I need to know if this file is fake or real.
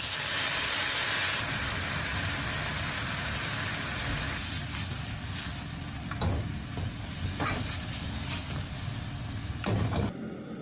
real